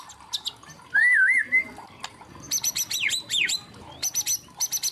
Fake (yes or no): no